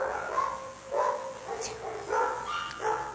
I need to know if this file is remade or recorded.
remade